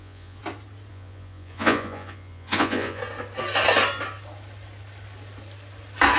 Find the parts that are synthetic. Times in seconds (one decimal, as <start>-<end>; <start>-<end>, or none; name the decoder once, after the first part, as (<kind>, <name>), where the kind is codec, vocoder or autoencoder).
0.0-0.4 (vocoder, Vocos); 0.9-3.0